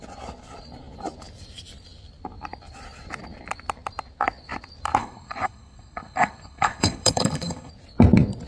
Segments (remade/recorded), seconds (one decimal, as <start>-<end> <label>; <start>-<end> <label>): 0.0-5.0 recorded; 5.0-7.7 remade; 7.7-8.5 recorded